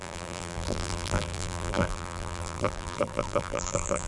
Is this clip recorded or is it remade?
remade